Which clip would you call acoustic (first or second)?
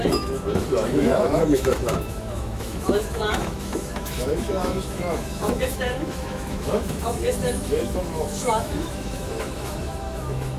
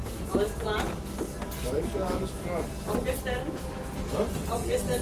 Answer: second